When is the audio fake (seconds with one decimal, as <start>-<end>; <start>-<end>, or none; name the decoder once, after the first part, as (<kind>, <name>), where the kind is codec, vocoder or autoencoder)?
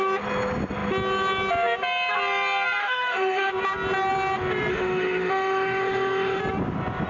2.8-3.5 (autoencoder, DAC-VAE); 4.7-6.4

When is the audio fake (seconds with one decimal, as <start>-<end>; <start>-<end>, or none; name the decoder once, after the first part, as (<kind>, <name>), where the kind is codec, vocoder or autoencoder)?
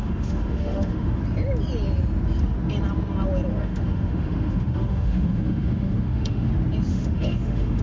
0.0-1.2 (autoencoder, DAC-VAE); 3.5-6.5; 6.9-7.8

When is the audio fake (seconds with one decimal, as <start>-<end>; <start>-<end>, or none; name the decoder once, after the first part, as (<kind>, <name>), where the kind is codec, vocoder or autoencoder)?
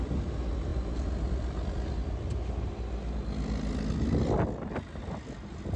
none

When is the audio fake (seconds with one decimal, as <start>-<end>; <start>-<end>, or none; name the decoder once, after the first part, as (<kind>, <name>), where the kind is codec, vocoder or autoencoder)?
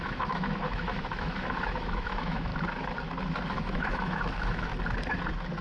0.0-2.5 (autoencoder, DAC-VAE); 3.5-4.7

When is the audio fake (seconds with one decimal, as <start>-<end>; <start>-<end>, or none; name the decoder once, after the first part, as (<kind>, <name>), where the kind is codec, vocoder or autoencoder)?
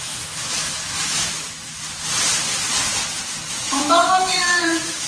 0.0-1.7 (autoencoder, DAC-VAE); 3.5-5.1